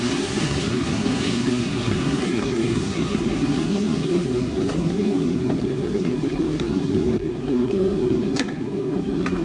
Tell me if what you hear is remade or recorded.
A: remade